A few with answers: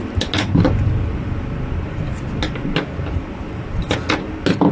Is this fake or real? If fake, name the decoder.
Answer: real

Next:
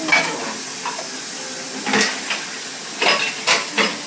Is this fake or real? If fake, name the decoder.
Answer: real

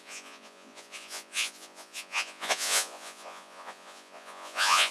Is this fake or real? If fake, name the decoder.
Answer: fake, vocoder, Vocos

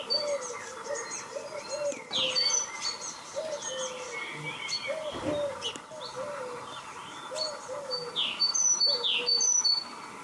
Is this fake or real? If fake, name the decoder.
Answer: real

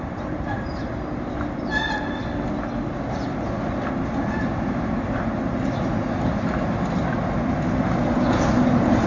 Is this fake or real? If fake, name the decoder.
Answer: real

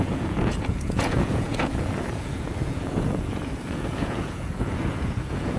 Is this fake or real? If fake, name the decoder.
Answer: fake, vocoder, Vocos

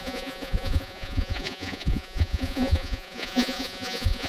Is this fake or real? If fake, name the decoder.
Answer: fake, vocoder, Vocos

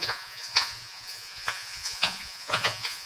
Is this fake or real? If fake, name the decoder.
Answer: fake, vocoder, Vocos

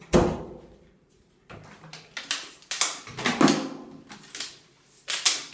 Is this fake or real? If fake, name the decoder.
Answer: real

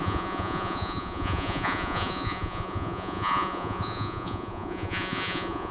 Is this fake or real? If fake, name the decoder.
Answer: fake, vocoder, Vocos